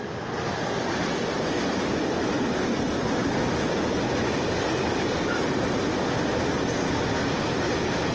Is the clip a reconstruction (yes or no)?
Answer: no